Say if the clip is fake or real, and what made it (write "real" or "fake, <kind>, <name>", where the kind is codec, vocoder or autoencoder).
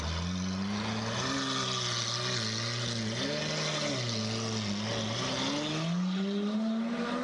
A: real